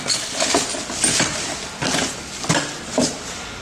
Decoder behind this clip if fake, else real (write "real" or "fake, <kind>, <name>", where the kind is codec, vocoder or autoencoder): real